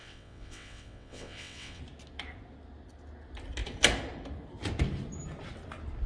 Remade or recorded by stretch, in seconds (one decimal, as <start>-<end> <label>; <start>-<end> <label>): 0.0-1.8 remade; 1.8-6.1 recorded